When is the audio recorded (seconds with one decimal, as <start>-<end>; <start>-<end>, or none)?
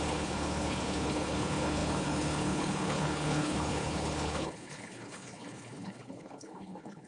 none